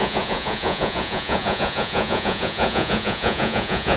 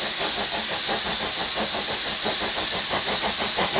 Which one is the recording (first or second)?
second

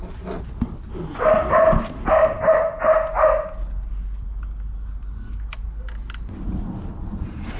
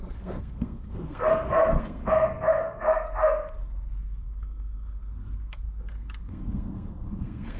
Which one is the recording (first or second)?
first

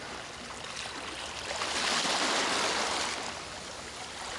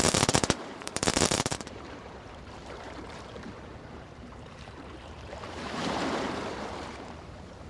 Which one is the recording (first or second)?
first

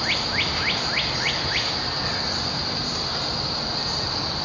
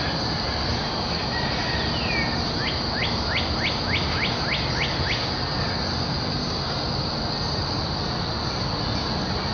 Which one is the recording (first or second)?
second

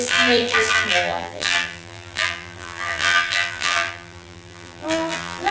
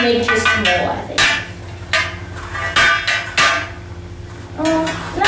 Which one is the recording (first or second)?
second